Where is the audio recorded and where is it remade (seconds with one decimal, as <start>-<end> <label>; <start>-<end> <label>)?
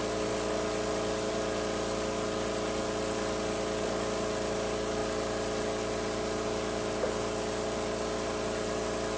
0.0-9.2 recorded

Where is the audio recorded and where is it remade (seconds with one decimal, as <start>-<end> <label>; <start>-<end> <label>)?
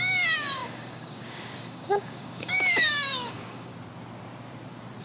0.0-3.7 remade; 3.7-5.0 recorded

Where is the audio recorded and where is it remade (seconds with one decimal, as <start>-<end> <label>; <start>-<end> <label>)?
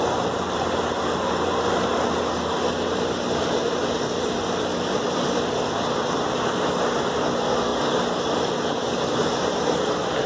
0.0-10.3 recorded